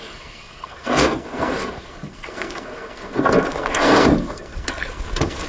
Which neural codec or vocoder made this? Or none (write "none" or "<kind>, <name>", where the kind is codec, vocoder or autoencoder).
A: codec, SNAC